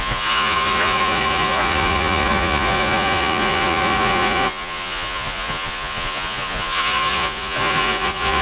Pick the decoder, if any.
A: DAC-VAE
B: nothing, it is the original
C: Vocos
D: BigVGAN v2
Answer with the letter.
C